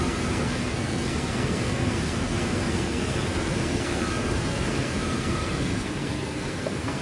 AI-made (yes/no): yes